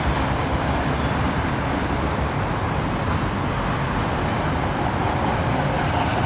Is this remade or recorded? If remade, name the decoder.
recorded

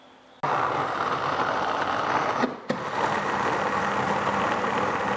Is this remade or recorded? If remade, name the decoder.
recorded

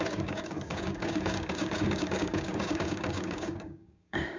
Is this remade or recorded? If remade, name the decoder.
remade, codec, DAC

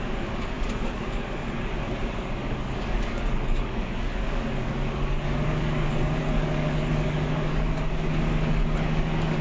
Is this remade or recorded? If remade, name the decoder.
remade, codec, DAC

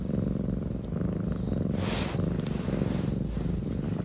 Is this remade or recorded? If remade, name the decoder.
recorded